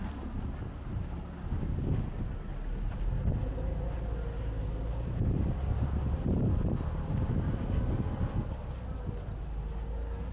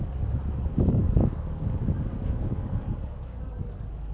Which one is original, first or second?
first